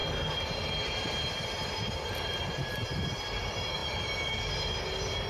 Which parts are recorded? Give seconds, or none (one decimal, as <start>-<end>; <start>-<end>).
0.0-5.3